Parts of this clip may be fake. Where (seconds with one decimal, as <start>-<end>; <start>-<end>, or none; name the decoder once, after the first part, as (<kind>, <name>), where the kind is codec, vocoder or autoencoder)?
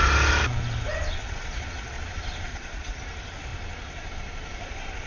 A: 1.2-2.0 (vocoder, Vocos); 2.5-3.0